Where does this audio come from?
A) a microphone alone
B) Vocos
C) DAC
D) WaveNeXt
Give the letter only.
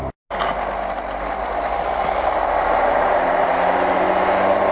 A